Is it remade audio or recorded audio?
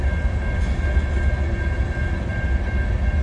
recorded